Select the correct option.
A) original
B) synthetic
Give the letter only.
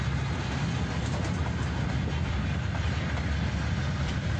A